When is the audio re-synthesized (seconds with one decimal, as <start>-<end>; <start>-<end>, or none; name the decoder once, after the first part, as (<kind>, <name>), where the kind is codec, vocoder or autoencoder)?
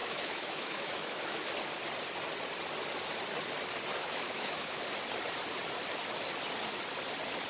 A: 0.0-1.5 (autoencoder, DAC-VAE); 4.0-4.8